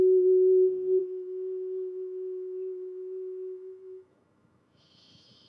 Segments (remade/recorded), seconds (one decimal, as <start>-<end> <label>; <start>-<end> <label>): 0.0-5.5 remade